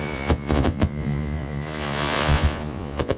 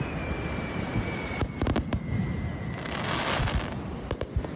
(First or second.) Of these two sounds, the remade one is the first